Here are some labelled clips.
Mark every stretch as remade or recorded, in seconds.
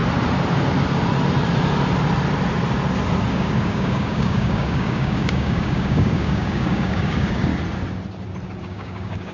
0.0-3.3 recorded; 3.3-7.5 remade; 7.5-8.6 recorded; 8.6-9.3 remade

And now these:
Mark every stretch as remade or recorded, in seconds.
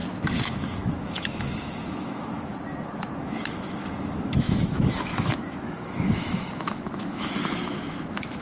0.0-0.6 recorded; 0.6-2.5 remade; 2.5-3.2 recorded; 3.2-8.4 remade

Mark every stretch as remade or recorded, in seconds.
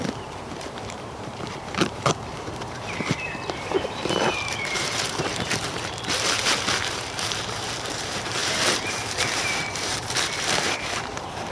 0.0-11.5 remade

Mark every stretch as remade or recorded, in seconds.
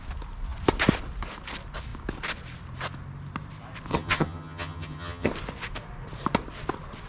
0.0-3.9 recorded; 3.9-5.3 remade; 5.3-7.1 recorded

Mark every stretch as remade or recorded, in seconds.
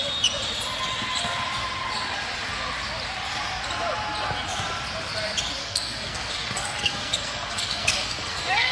0.0-5.6 recorded; 5.6-8.7 remade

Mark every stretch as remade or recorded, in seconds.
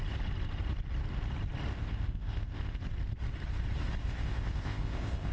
0.0-1.7 recorded; 1.7-2.8 remade; 2.8-4.0 recorded; 4.0-5.3 remade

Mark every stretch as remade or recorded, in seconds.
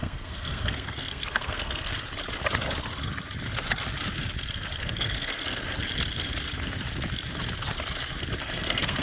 0.0-1.9 remade; 1.9-4.8 recorded; 4.8-5.4 remade; 5.4-8.4 recorded; 8.4-9.0 remade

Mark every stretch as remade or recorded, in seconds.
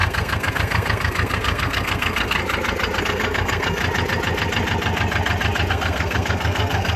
0.0-2.4 remade; 2.4-3.0 recorded; 3.0-3.8 remade; 3.8-5.7 recorded; 5.7-7.0 remade